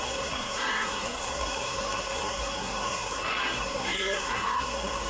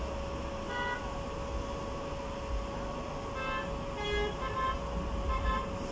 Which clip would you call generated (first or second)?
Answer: first